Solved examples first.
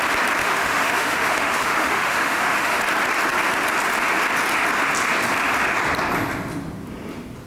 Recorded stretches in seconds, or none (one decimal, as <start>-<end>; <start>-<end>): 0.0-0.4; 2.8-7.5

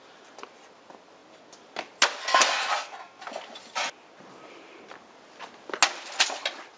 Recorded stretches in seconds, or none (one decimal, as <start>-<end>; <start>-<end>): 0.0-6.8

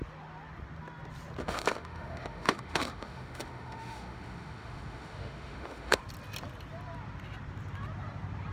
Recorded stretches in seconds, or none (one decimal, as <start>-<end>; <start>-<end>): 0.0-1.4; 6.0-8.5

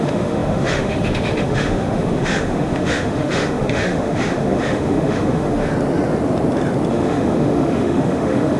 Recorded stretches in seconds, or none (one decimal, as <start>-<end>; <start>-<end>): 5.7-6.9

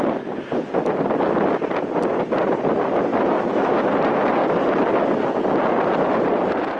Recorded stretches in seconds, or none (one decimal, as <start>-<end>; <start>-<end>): 0.0-3.1; 3.9-6.8